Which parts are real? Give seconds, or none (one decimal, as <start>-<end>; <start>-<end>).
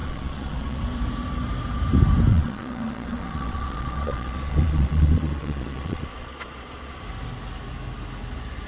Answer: 0.8-2.3; 7.0-8.7